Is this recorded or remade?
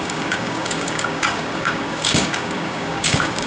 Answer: remade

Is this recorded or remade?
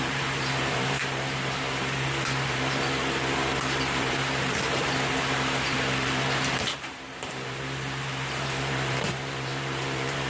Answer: remade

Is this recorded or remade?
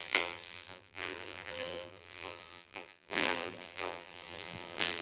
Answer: remade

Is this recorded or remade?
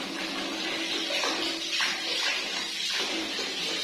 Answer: recorded